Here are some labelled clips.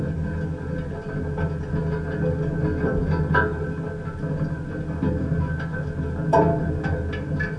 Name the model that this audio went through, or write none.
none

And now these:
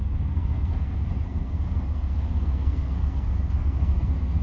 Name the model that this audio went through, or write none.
codec, SNAC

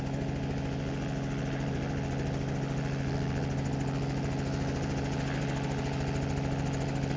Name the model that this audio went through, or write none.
none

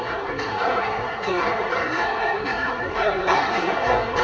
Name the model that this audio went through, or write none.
codec, SNAC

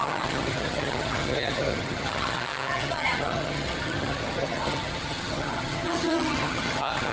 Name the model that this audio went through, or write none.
vocoder, HiFi-GAN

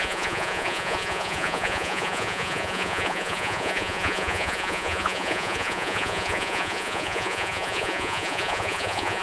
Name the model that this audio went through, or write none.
vocoder, Vocos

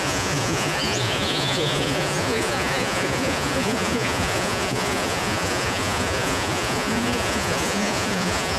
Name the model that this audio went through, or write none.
vocoder, Vocos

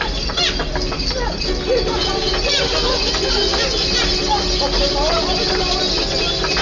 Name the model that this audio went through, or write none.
none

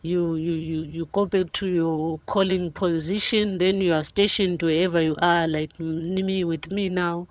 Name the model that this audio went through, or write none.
vocoder, HiFi-GAN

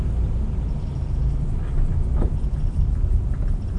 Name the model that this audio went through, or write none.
none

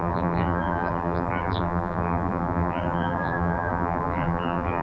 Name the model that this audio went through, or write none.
vocoder, BigVGAN v2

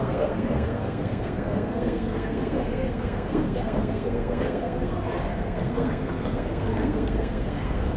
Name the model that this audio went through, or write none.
codec, SNAC